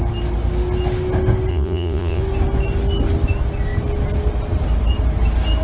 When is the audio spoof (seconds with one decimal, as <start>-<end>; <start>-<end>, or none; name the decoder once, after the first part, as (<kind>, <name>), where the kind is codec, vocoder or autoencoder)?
1.5-2.2 (vocoder, Vocos)